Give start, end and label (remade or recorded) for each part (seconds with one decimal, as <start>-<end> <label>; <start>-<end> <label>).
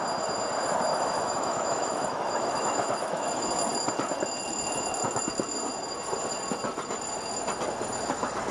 0.0-0.9 recorded; 0.9-3.5 remade; 3.5-8.5 recorded